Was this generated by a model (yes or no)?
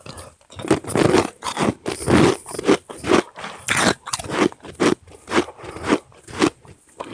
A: no